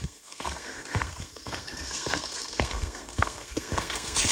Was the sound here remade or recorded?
remade